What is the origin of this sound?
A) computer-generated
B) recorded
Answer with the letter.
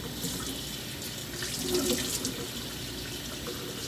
B